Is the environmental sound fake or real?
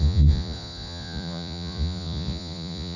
fake